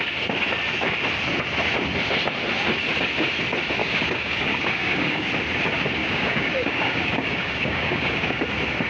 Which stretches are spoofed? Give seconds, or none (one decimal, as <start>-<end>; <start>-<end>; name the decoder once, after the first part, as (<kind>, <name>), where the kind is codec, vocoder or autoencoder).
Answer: 3.8-5.3 (codec, DAC); 6.0-8.4